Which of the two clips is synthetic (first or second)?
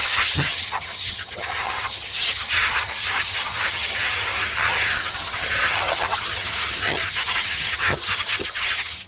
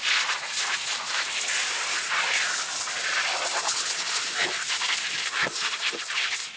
first